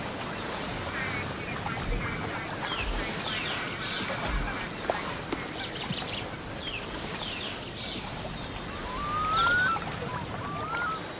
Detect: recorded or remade recorded